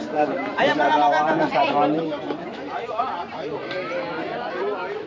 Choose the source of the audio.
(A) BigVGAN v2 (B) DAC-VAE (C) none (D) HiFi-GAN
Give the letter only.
A